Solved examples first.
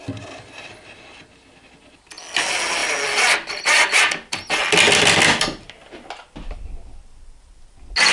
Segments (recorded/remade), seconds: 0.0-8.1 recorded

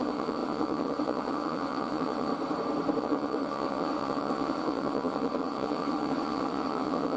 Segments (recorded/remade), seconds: 0.0-2.3 remade; 2.3-3.0 recorded; 3.0-7.2 remade